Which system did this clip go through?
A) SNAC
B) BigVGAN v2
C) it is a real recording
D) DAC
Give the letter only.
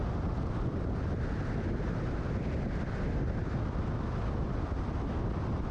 C